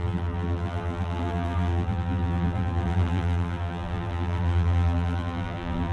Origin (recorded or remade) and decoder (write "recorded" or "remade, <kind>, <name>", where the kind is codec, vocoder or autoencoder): remade, vocoder, BigVGAN v2